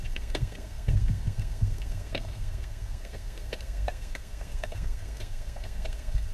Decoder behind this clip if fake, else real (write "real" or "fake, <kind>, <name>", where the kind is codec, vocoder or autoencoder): fake, codec, SNAC